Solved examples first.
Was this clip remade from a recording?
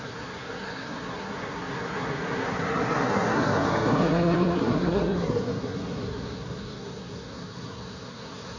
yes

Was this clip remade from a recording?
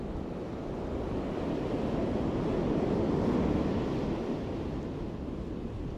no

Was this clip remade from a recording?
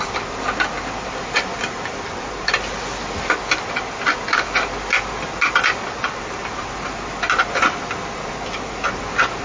no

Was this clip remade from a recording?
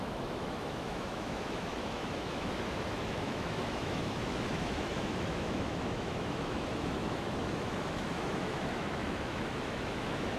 yes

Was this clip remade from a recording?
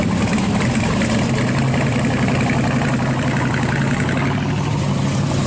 no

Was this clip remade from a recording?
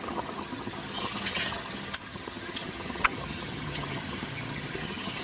yes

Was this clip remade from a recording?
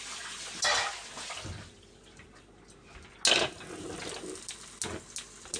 no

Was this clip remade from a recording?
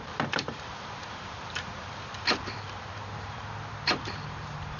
yes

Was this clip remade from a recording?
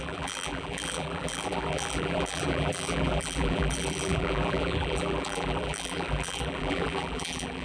yes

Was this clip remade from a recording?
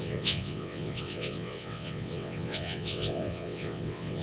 yes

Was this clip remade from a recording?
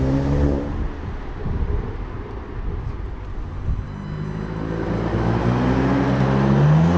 no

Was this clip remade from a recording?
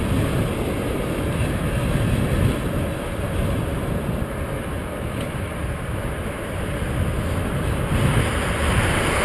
no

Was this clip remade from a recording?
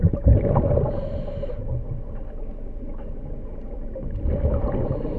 no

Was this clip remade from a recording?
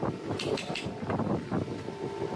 no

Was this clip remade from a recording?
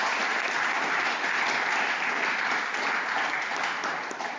no